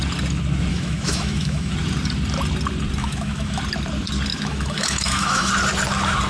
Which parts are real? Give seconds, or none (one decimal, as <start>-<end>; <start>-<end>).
0.0-0.7; 1.7-3.0; 3.6-4.3; 5.5-6.3